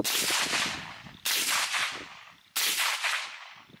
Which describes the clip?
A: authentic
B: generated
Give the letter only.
A